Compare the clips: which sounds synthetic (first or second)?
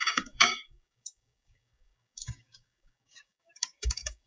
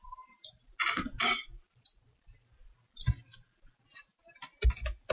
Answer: first